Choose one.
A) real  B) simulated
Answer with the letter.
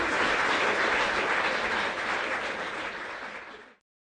A